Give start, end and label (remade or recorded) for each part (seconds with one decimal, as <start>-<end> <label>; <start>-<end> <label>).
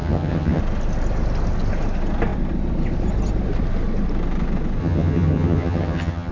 0.0-0.6 remade; 0.6-4.8 recorded; 4.8-6.3 remade